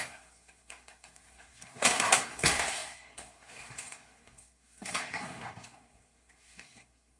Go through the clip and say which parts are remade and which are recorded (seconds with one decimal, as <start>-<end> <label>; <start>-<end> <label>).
0.0-7.2 remade